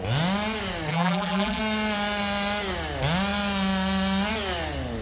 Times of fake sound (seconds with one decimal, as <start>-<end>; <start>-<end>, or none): 0.9-1.6